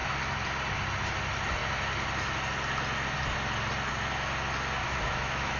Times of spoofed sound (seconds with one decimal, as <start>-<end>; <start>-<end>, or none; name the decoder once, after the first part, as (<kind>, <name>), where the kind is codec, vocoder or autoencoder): 4.8-5.6 (autoencoder, DAC-VAE)